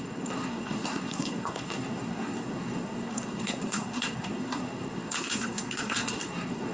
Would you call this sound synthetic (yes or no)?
yes